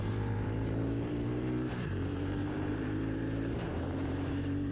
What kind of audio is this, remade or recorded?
remade